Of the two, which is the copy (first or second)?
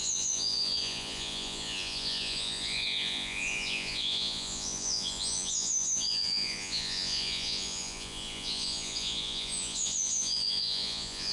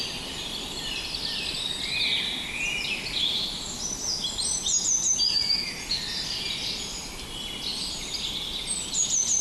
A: first